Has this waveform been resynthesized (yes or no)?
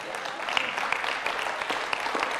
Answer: no